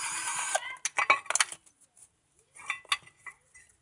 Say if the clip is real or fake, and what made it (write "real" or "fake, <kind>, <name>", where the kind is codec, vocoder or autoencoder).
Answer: real